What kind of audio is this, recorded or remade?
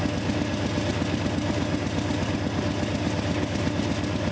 recorded